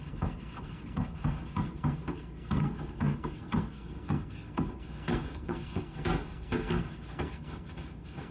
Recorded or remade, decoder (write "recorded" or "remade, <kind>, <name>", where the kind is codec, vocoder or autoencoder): remade, codec, SNAC